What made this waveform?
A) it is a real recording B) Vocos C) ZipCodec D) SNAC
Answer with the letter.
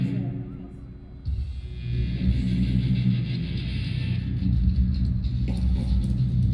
A